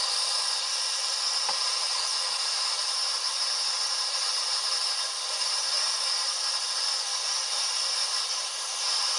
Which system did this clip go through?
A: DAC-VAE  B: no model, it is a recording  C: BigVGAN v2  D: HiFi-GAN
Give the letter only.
B